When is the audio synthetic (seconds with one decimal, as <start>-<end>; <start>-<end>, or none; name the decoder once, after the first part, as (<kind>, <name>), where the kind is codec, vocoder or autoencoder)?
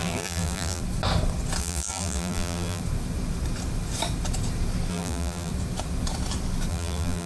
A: 0.0-0.8 (vocoder, BigVGAN v2); 1.6-2.8; 4.9-5.5; 6.7-7.3